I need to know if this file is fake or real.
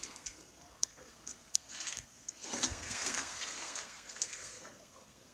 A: fake